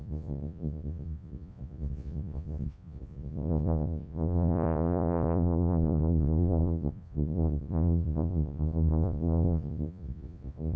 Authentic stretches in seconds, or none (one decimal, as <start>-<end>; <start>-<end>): none

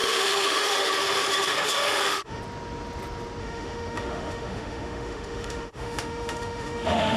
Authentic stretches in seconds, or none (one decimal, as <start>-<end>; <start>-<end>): 2.4-3.4